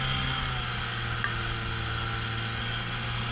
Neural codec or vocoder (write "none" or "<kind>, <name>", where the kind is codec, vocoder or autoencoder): none